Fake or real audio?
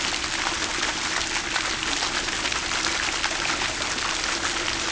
real